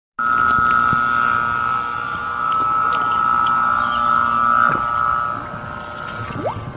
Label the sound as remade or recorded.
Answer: recorded